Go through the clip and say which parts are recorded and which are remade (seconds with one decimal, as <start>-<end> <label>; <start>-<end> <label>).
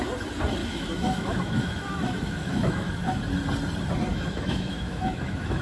0.0-0.6 recorded; 0.6-3.2 remade; 3.2-4.1 recorded; 4.1-5.6 remade